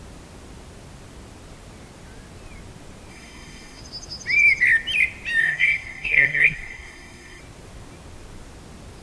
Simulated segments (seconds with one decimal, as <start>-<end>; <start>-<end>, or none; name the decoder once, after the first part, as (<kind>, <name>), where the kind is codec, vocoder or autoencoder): 3.1-3.8 (codec, SNAC); 5.4-7.4